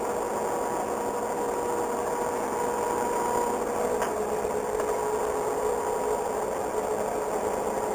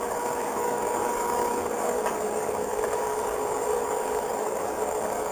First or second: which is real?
first